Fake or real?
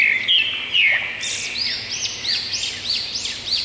real